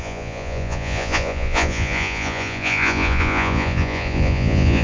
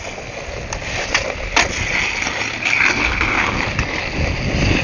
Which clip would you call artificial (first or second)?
first